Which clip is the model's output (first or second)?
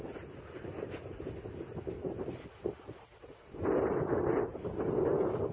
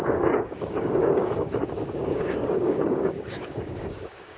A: second